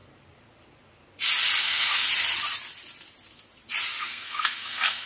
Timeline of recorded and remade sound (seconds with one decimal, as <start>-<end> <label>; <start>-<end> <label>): 0.0-1.6 recorded; 1.6-2.0 remade; 2.0-4.0 recorded; 4.0-5.1 remade